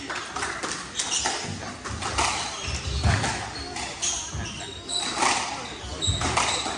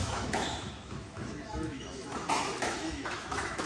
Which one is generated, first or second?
second